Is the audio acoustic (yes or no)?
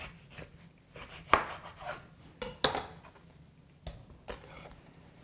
yes